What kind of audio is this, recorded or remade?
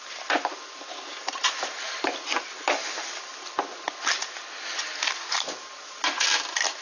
recorded